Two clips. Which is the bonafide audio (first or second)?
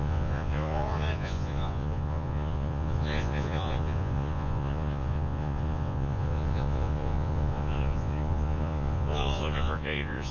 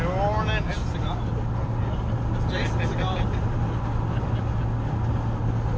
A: second